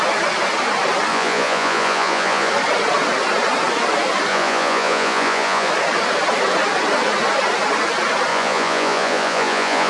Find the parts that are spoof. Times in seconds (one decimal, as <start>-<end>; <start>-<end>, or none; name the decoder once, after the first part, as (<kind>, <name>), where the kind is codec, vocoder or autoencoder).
1.1-2.5 (vocoder, Vocos); 4.3-5.7; 8.3-9.9